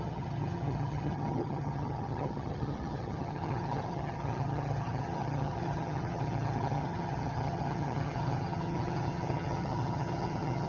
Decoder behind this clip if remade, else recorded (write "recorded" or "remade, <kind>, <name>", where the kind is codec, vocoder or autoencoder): remade, vocoder, HiFi-GAN